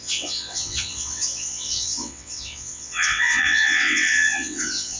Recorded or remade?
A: remade